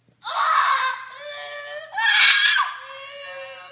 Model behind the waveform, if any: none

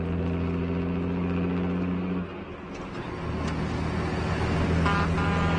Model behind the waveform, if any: none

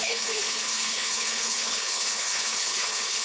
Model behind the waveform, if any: codec, HILCodec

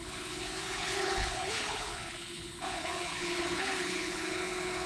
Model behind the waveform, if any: codec, HILCodec